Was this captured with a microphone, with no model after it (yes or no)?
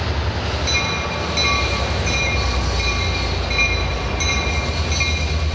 yes